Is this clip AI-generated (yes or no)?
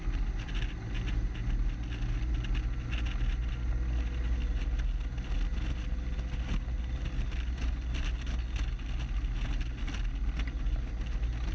no